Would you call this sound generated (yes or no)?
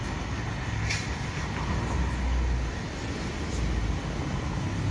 no